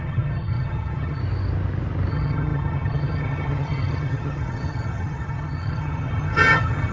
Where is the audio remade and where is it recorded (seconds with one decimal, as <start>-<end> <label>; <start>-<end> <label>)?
0.0-1.2 remade; 1.2-2.1 recorded; 2.1-6.9 remade